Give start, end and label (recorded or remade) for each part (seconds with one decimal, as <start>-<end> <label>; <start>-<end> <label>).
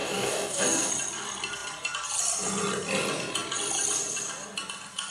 0.0-0.9 remade; 0.9-5.1 recorded